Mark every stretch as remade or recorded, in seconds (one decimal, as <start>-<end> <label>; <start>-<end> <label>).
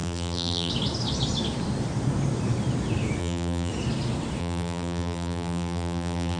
0.0-0.7 remade; 0.7-3.2 recorded; 3.2-3.7 remade; 3.7-4.4 recorded; 4.4-6.4 remade